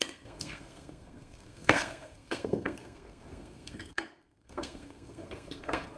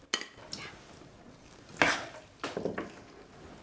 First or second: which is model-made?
first